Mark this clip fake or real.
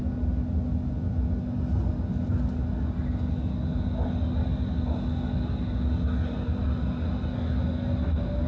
real